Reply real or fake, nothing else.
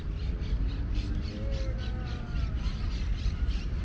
real